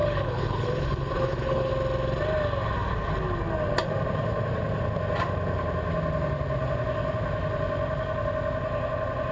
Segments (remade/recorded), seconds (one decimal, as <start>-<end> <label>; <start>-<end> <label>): 0.0-1.7 remade; 1.7-9.3 recorded